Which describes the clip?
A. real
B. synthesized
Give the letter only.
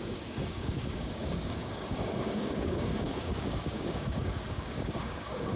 B